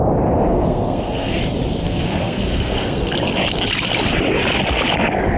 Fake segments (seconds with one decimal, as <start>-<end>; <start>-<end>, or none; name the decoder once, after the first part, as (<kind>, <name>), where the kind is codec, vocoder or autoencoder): 0.5-1.4 (codec, SNAC); 1.8-3.1